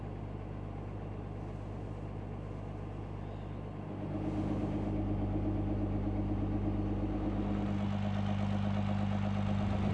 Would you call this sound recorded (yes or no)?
yes